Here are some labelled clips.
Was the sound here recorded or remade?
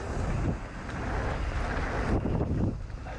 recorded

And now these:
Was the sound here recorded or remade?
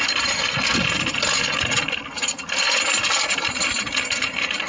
recorded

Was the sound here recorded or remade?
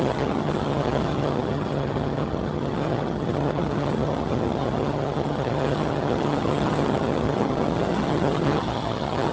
remade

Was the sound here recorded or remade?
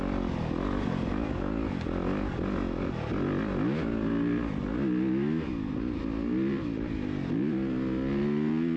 recorded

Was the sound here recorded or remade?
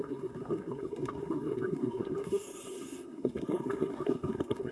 remade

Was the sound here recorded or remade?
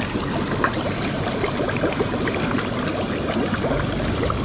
recorded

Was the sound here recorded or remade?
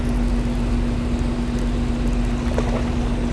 recorded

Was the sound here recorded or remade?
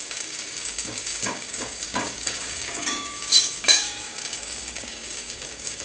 remade